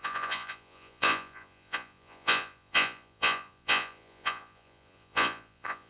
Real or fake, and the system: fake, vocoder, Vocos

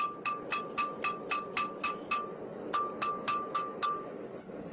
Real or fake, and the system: real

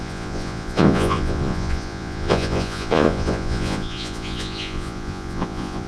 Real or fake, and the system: fake, vocoder, Vocos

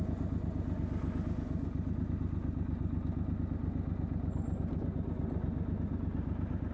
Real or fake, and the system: real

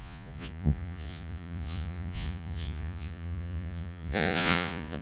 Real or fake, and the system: fake, vocoder, Vocos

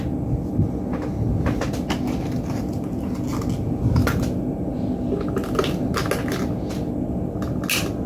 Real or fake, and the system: real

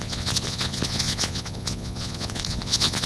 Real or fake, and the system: fake, vocoder, Vocos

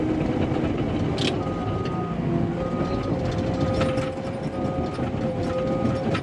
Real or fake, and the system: real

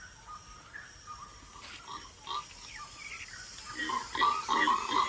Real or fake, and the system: real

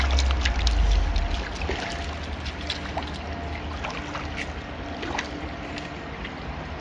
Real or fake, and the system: real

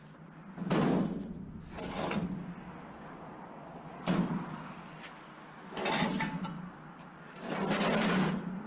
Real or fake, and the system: real